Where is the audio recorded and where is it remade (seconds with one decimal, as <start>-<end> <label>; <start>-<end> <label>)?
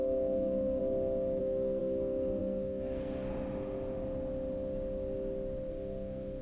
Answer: 0.0-0.8 remade; 0.8-1.4 recorded; 1.4-3.3 remade; 3.3-5.7 recorded; 5.7-6.4 remade